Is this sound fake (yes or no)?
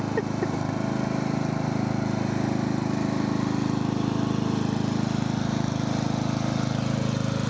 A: no